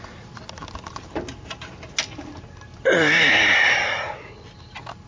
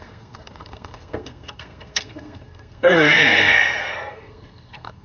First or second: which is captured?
first